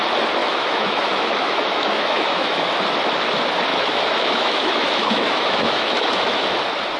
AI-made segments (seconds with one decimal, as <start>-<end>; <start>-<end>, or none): 0.4-2.7; 3.7-6.6